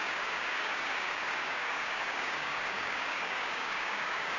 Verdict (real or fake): fake